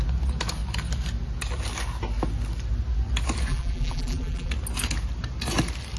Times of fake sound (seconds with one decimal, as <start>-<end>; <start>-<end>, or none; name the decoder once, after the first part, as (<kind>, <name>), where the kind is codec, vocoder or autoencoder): 3.5-4.5 (vocoder, BigVGAN v2)